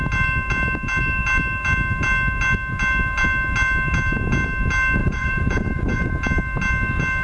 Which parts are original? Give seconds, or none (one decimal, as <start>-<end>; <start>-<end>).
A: 0.0-5.0; 6.1-7.2